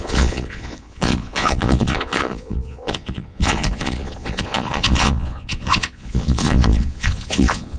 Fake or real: fake